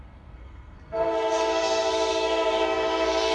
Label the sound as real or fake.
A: fake